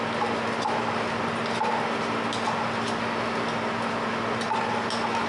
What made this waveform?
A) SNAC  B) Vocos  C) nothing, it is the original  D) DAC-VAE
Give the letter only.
C